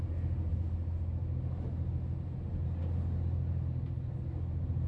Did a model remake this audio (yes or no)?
no